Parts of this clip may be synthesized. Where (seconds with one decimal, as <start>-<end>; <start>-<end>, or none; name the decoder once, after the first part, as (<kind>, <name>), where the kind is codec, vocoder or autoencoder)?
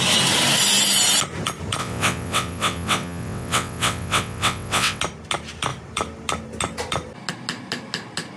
1.8-5.0 (vocoder, WaveNeXt)